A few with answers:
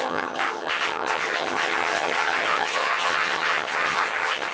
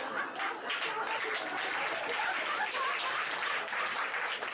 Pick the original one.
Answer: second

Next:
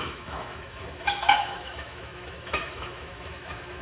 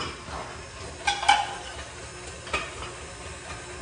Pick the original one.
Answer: second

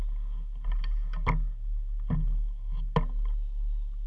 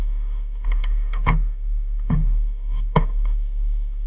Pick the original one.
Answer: first